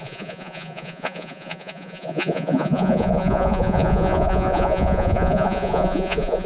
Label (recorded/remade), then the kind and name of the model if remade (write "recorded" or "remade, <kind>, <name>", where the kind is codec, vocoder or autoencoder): remade, vocoder, Vocos